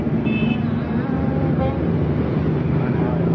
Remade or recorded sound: recorded